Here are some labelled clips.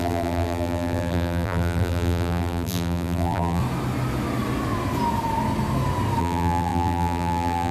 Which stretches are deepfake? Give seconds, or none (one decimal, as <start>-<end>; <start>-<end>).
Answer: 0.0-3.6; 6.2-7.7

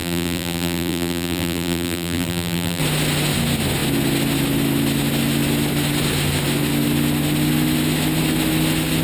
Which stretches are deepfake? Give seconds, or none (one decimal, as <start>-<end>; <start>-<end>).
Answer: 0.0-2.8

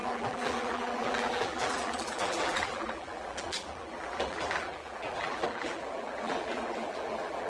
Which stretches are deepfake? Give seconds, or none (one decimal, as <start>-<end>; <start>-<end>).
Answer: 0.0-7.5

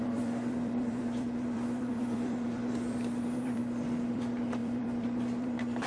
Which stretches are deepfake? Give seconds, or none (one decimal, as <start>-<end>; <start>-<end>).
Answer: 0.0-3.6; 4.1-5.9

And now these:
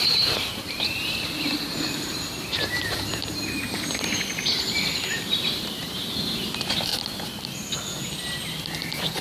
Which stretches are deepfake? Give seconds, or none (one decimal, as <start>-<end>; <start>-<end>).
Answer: 0.0-6.9